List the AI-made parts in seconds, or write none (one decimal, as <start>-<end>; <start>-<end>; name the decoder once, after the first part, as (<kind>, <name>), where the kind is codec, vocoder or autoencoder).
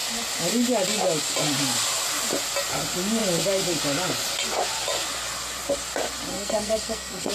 6.3-7.3 (codec, SNAC)